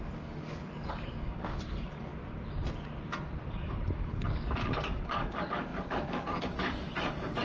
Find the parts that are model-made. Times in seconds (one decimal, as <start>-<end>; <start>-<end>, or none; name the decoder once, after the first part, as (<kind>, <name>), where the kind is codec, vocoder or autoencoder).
0.0-2.1 (codec, DAC); 3.5-7.4